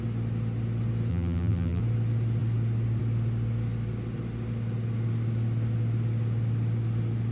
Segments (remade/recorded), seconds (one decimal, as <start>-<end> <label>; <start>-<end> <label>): 0.0-1.1 recorded; 1.1-1.8 remade; 1.8-7.3 recorded